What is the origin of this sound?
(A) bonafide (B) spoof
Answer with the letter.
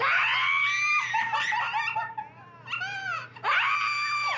A